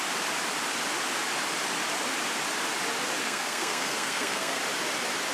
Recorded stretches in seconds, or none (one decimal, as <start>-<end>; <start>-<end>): 0.0-3.2; 4.6-5.3